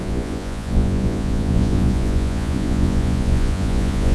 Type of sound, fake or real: fake